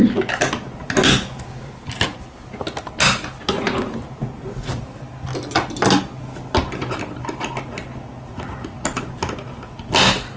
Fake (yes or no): no